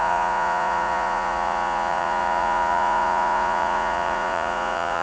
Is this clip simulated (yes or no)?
yes